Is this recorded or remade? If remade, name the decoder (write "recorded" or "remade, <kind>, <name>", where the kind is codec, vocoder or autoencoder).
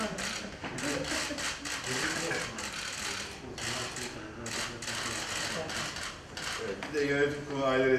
recorded